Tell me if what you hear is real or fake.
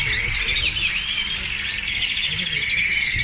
real